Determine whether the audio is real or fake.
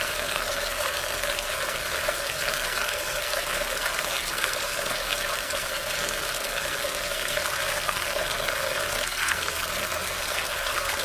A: fake